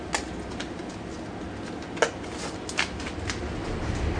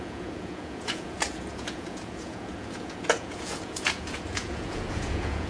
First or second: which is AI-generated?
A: second